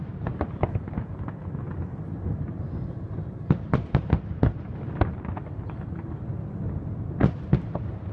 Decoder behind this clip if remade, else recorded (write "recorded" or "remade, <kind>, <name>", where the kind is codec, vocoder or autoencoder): recorded